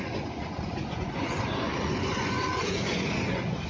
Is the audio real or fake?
fake